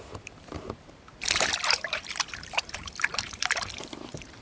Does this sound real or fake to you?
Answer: fake